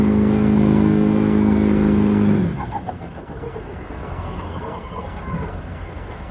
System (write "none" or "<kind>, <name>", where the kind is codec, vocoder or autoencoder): codec, SNAC